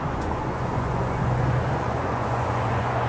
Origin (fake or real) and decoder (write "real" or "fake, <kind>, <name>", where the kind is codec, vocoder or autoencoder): fake, vocoder, Vocos